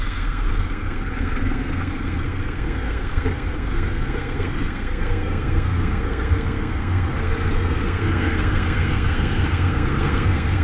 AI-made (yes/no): yes